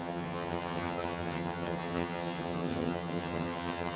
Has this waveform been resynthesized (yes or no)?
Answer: yes